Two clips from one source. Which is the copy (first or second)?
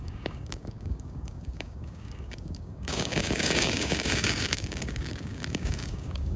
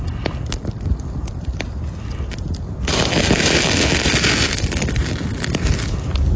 first